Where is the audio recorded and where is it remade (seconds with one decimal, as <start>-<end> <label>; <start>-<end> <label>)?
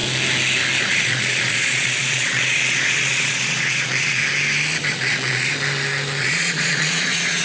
0.0-0.8 recorded; 0.8-4.2 remade; 4.2-4.9 recorded; 4.9-5.5 remade; 5.5-6.2 recorded; 6.2-7.4 remade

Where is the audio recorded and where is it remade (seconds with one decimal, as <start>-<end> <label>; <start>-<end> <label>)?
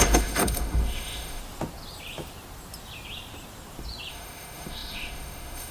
0.0-1.4 remade; 1.4-4.1 recorded; 4.1-5.7 remade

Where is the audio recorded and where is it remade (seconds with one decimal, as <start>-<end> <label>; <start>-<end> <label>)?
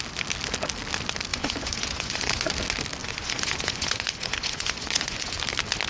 0.0-1.3 recorded; 1.3-2.5 remade; 2.5-3.0 recorded; 3.0-5.4 remade; 5.4-5.9 recorded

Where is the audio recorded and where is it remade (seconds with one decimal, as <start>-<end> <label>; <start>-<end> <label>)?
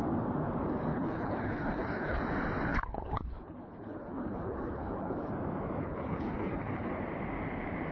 0.0-0.9 recorded; 0.9-2.2 remade; 2.2-2.7 recorded; 2.7-5.3 remade; 5.3-5.8 recorded; 5.8-6.9 remade; 6.9-7.9 recorded